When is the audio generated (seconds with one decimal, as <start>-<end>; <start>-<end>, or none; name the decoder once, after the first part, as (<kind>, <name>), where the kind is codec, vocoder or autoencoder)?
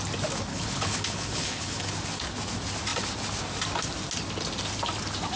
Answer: 0.5-1.9 (codec, HILCodec)